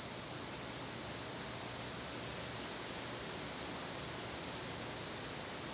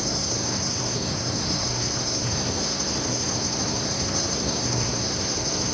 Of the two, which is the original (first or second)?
first